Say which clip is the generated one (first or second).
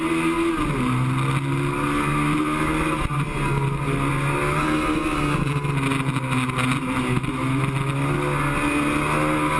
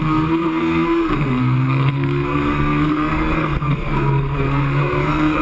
second